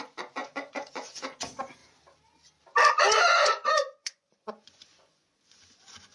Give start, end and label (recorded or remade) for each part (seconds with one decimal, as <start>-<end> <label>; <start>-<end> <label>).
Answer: 0.0-1.8 remade; 1.8-2.9 recorded; 2.9-6.1 remade